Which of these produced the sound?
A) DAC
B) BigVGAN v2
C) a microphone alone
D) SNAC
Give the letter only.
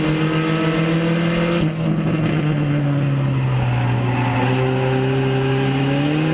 C